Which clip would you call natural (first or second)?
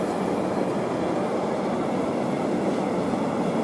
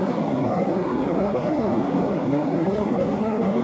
first